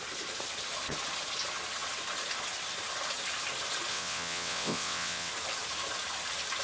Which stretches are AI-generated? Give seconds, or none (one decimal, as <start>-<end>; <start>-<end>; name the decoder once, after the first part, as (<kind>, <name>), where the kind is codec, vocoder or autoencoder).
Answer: 3.9-5.3 (vocoder, WaveNeXt)